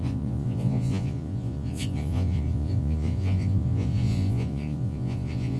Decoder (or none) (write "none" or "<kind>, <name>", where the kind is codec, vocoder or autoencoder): vocoder, Vocos